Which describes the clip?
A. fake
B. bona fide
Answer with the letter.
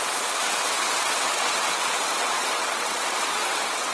A